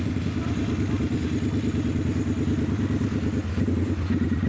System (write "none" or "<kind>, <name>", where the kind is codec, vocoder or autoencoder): none